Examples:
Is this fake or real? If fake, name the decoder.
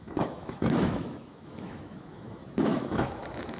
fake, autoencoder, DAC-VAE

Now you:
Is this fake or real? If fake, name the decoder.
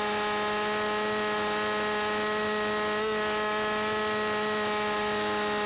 real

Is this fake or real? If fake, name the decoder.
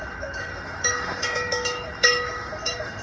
fake, autoencoder, DAC-VAE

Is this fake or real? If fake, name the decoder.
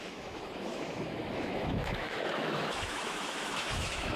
fake, autoencoder, DAC-VAE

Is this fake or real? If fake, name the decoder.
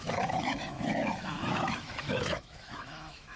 fake, autoencoder, DAC-VAE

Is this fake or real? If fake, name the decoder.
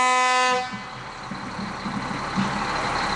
real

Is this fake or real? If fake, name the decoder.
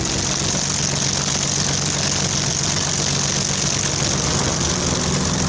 real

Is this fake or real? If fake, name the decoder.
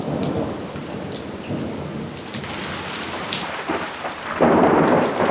real